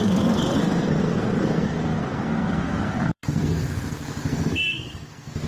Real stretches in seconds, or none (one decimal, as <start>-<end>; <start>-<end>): none